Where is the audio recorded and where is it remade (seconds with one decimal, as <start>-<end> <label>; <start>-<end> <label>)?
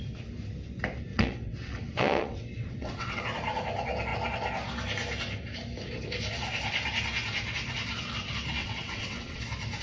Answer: 0.0-1.1 recorded; 1.1-3.2 remade; 3.2-8.6 recorded; 8.6-9.4 remade; 9.4-9.8 recorded